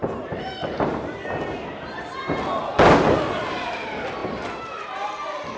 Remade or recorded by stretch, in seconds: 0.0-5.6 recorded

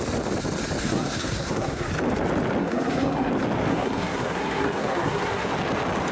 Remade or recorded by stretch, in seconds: 0.0-0.8 recorded; 0.8-1.9 remade; 1.9-2.6 recorded; 2.6-3.3 remade; 3.3-3.7 recorded; 3.7-5.5 remade; 5.5-6.1 recorded

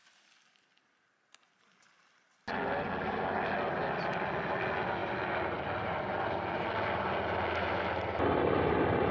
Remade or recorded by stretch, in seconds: 0.0-9.1 recorded

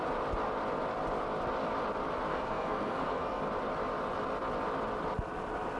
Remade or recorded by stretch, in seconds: 0.0-2.3 recorded; 2.3-3.4 remade; 3.4-5.8 recorded

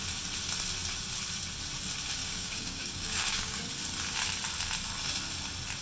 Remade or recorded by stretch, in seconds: 0.0-2.2 recorded; 2.2-3.7 remade; 3.7-5.8 recorded

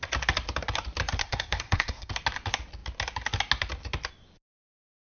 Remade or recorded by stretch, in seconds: 0.0-1.2 recorded; 1.2-2.1 remade; 2.1-5.1 recorded